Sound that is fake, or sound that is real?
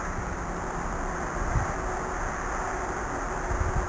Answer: real